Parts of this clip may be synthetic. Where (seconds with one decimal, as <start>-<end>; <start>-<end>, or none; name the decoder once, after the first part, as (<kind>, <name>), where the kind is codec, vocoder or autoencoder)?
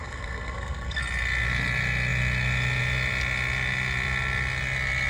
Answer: 0.0-1.0 (codec, SNAC)